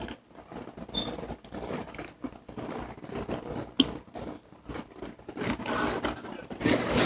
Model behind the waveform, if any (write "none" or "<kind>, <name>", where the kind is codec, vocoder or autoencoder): none